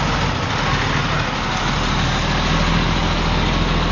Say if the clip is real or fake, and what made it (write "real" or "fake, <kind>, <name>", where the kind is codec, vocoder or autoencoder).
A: real